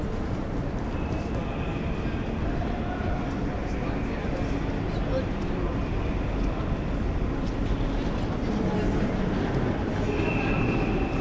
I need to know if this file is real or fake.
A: real